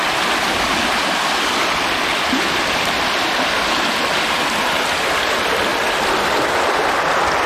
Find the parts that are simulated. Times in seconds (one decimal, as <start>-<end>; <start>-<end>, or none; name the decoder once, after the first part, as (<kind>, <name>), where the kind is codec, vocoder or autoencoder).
none